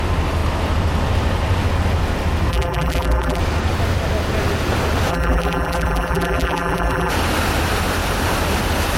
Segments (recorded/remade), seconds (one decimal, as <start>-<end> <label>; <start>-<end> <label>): 0.0-2.5 recorded; 2.5-3.4 remade; 3.4-5.1 recorded; 5.1-7.1 remade; 7.1-9.0 recorded